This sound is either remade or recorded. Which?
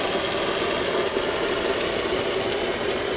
recorded